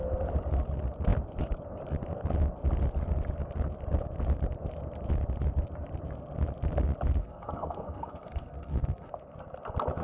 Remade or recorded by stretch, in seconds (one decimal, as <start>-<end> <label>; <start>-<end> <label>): 0.0-7.2 recorded; 7.2-9.1 remade; 9.1-10.0 recorded

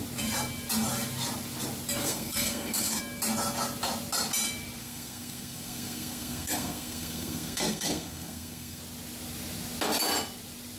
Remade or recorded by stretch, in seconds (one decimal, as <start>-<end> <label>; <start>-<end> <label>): 0.0-2.0 recorded; 2.0-3.0 remade; 3.0-4.8 recorded; 4.8-8.8 remade; 8.8-10.8 recorded

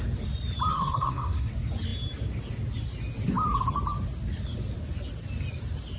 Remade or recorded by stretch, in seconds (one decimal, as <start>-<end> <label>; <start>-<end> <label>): 0.0-0.7 recorded; 0.7-1.5 remade; 1.5-6.0 recorded

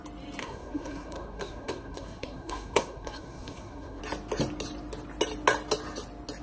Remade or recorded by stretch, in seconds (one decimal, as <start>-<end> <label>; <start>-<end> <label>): 0.0-0.4 recorded; 0.4-4.0 remade; 4.0-6.4 recorded